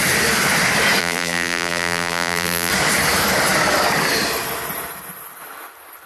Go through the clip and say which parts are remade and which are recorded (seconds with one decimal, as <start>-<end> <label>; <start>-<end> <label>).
0.0-1.0 recorded; 1.0-2.7 remade; 2.7-6.1 recorded